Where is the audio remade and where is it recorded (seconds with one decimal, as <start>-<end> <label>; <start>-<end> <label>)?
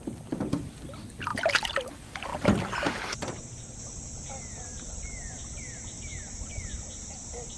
0.0-7.6 recorded